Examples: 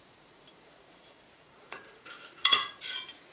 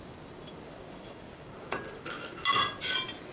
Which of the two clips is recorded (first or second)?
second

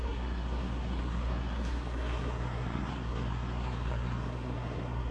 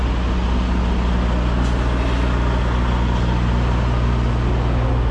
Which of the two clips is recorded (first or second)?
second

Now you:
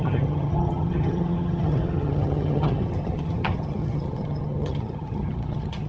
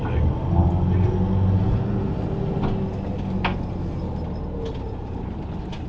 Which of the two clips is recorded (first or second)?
second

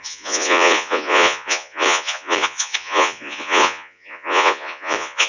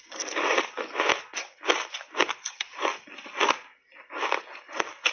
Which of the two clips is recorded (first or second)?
second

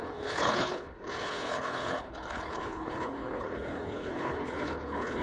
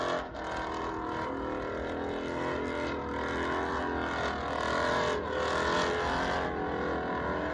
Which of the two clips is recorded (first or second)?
second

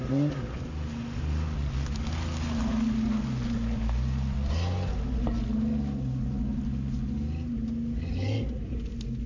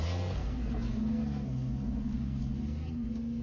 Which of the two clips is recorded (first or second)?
first